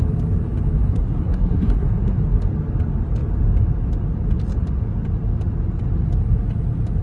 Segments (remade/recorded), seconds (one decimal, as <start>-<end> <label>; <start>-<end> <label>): 0.0-0.9 recorded; 0.9-2.2 remade; 2.2-7.0 recorded